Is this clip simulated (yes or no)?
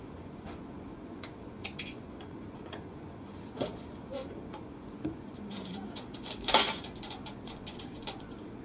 yes